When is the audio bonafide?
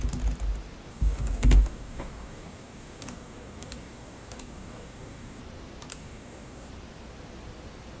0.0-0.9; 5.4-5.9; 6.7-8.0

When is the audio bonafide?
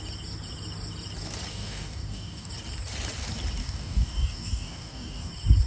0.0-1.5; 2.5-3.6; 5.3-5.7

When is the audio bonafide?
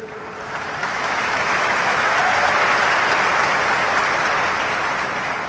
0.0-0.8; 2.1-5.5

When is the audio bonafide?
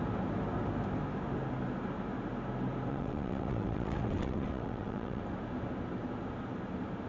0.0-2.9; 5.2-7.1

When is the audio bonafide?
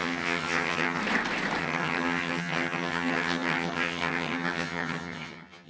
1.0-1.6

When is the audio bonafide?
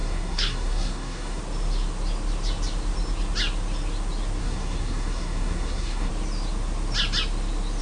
1.4-4.4; 6.1-7.8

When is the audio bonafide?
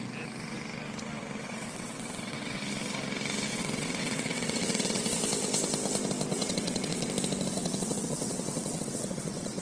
0.0-1.4; 2.6-3.5; 5.0-6.3; 7.1-7.5